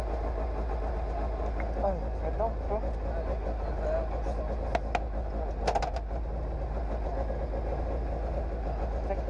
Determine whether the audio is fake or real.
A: real